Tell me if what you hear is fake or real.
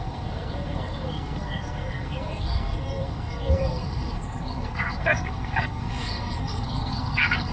fake